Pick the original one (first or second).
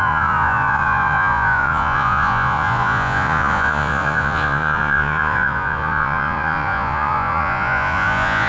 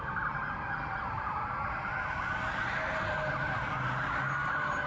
second